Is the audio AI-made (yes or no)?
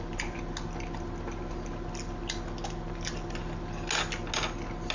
no